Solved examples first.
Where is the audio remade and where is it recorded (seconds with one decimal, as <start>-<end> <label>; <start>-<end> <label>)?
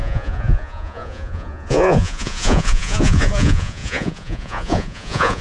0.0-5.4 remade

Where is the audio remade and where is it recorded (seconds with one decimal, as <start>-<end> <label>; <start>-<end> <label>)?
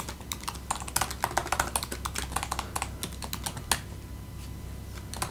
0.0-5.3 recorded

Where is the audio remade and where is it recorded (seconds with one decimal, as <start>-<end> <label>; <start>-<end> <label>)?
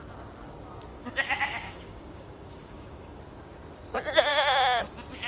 0.0-0.9 recorded; 0.9-3.2 remade; 3.2-4.3 recorded; 4.3-4.8 remade; 4.8-5.3 recorded